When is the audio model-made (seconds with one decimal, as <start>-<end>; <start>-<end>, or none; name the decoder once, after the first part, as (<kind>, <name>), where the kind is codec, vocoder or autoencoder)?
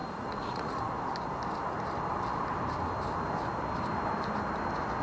0.0-0.8 (vocoder, Vocos)